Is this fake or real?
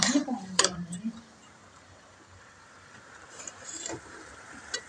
fake